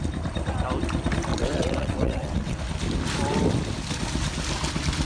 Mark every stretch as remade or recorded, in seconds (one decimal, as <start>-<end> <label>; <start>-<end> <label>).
0.0-1.3 recorded; 1.3-2.6 remade; 2.6-5.0 recorded